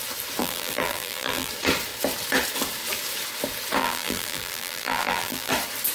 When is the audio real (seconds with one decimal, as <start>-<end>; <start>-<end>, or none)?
0.0-0.4; 1.5-3.8; 5.5-5.9